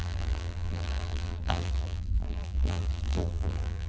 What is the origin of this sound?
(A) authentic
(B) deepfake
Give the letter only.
B